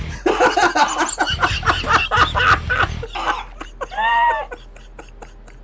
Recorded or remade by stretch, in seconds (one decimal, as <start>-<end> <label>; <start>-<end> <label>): 0.0-5.6 recorded

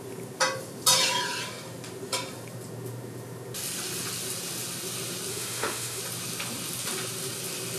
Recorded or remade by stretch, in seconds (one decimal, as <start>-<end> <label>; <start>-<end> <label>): 0.0-5.3 recorded; 5.3-6.0 remade; 6.0-7.8 recorded

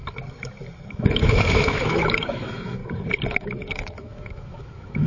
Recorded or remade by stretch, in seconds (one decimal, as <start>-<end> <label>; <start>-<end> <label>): 0.0-0.9 recorded; 0.9-2.8 remade; 2.8-3.3 recorded; 3.3-5.1 remade